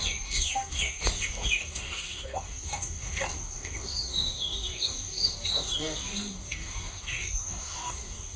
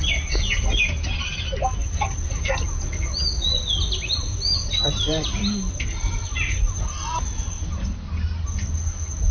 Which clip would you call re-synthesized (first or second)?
first